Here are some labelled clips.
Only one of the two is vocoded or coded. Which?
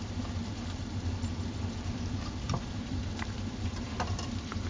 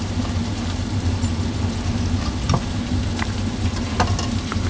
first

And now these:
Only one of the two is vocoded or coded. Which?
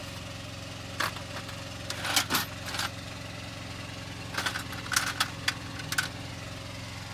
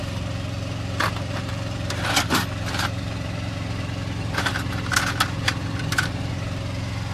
second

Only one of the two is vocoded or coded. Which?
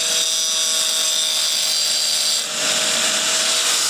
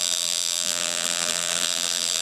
second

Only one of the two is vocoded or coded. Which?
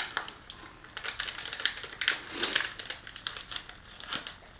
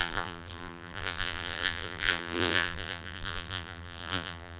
second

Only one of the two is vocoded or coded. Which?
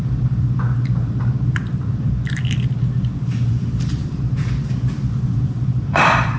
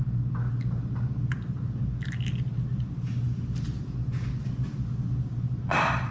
first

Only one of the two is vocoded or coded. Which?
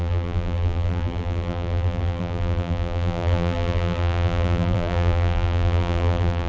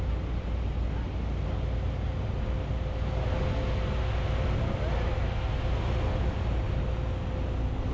first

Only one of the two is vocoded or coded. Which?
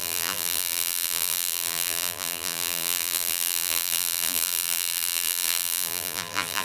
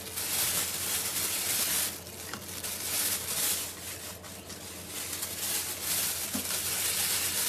first